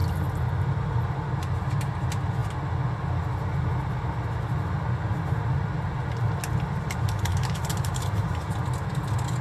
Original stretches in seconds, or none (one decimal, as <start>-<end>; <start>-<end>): 0.0-7.3; 8.5-9.4